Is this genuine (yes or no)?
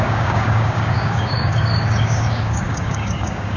no